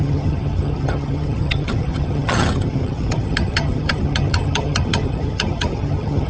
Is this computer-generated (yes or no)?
yes